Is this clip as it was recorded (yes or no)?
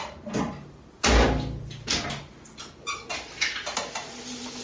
yes